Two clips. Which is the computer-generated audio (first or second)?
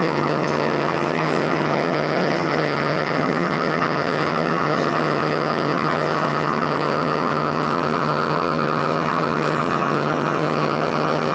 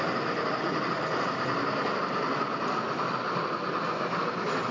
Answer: first